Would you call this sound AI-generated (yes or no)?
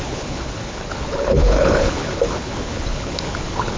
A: yes